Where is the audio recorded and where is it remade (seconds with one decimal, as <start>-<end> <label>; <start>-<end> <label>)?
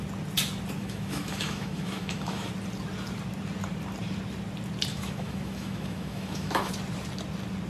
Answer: 0.0-0.8 recorded; 0.8-2.5 remade; 2.5-4.9 recorded; 4.9-6.7 remade; 6.7-7.7 recorded